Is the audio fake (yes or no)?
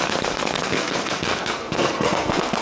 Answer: yes